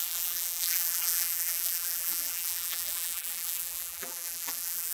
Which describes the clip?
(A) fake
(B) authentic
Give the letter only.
A